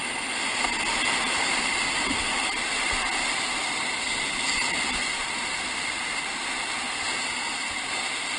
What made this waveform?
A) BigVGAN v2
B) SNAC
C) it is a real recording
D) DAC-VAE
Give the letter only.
C